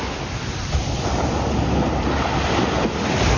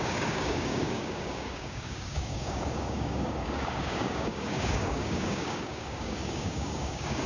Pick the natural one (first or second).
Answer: first